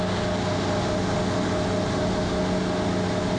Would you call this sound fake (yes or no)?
no